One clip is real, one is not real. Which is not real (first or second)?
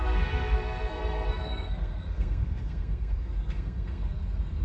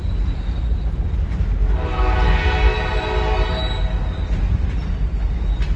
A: first